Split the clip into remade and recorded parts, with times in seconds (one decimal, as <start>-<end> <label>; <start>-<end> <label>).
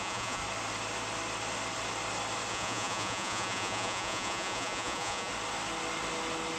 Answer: 0.0-0.4 remade; 0.4-2.5 recorded; 2.5-5.3 remade; 5.3-6.6 recorded